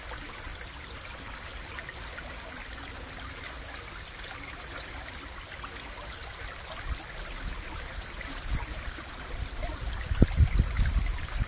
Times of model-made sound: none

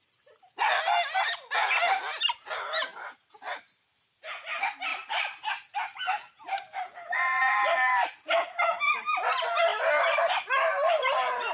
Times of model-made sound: 4.9-7.5 (vocoder, BigVGAN v2)

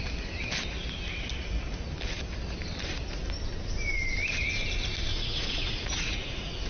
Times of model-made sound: 5.1-6.7 (vocoder, Vocos)

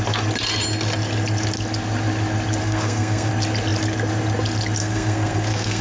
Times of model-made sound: 2.6-3.3 (codec, SNAC); 4.8-5.8

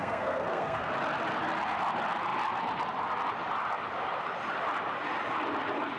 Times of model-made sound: 0.0-0.9 (codec, SNAC)

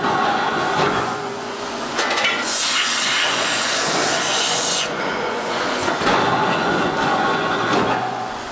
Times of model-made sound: 0.0-8.5 (vocoder, Vocos)